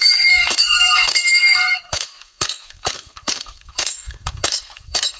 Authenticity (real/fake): fake